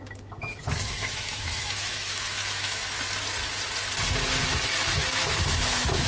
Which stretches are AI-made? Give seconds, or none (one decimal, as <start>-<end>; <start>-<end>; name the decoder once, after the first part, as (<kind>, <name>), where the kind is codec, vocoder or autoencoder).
0.0-2.8 (autoencoder, DAC-VAE); 4.9-6.1